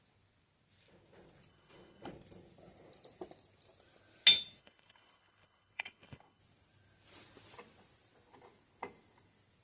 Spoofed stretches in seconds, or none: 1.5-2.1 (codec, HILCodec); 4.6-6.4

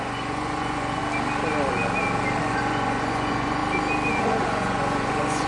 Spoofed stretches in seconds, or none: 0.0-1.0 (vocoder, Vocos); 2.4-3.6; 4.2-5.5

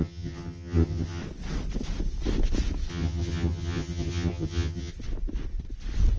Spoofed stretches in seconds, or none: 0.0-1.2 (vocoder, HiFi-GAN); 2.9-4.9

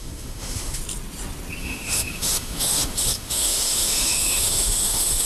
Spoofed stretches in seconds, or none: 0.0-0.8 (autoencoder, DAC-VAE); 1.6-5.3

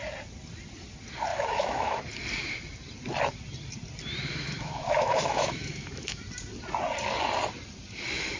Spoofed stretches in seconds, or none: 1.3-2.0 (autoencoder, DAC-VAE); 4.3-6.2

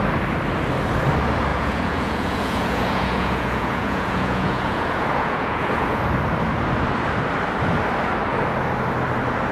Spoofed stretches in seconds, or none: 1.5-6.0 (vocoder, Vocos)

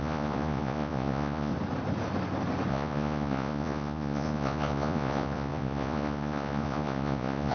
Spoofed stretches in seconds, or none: 0.0-1.5 (vocoder, Vocos); 2.7-7.5